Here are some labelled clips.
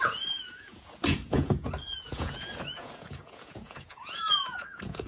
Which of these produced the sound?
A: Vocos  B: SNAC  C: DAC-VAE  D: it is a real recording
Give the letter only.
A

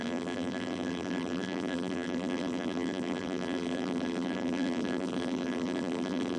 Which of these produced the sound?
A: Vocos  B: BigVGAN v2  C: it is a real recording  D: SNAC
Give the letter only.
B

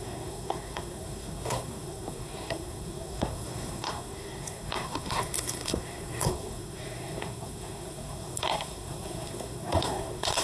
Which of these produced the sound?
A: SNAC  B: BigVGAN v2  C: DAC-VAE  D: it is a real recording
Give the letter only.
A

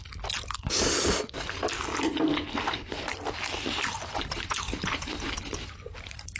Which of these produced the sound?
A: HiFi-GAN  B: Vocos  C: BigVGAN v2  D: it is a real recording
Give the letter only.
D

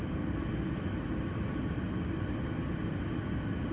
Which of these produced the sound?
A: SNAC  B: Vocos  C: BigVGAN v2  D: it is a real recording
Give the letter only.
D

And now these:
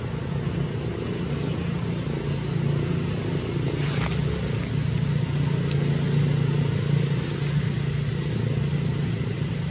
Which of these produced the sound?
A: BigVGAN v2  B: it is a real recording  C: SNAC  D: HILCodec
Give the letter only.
B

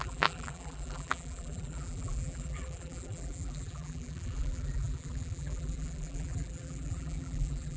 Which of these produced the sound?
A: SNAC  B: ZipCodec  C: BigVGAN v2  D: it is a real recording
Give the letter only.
C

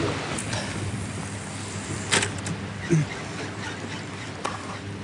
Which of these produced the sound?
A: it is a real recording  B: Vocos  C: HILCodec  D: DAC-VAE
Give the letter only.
A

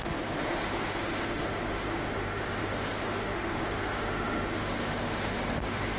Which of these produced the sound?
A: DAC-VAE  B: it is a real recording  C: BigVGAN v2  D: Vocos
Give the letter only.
A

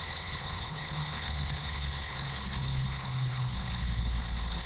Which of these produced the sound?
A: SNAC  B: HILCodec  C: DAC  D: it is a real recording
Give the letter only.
B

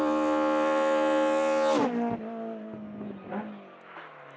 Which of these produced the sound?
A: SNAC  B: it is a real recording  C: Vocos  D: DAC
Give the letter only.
B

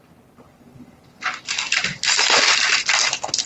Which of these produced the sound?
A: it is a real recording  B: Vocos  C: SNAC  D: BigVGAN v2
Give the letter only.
A